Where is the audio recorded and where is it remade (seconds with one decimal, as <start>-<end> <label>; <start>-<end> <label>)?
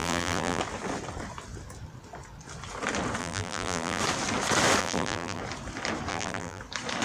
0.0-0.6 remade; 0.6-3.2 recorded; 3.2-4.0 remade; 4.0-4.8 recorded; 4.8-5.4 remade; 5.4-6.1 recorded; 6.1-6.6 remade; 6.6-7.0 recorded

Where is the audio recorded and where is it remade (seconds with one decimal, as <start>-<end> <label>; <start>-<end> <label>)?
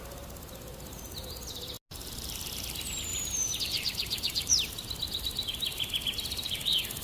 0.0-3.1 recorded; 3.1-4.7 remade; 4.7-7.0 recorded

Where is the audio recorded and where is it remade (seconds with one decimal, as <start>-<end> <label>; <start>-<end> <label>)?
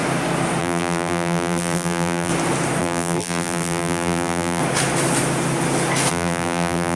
0.0-0.6 recorded; 0.6-2.3 remade; 2.3-2.8 recorded; 2.8-4.6 remade; 4.6-6.1 recorded; 6.1-7.0 remade